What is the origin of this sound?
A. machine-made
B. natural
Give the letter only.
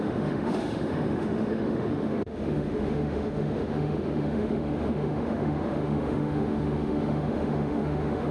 A